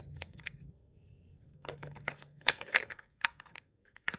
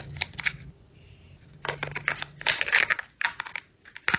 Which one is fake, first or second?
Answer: first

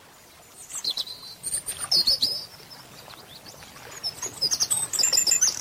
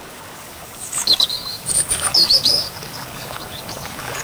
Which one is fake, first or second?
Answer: second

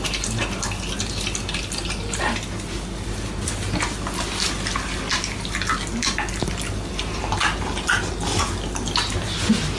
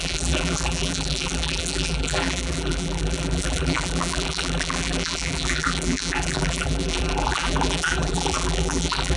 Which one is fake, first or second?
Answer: second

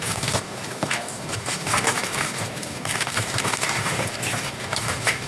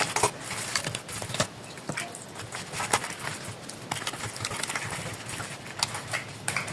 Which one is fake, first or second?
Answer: first